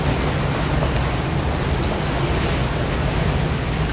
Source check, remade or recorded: recorded